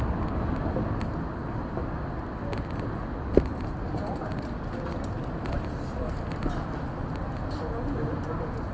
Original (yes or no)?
yes